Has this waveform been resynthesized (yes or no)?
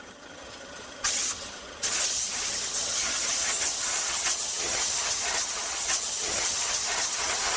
yes